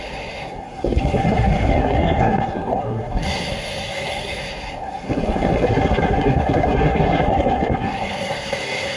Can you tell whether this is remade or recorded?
remade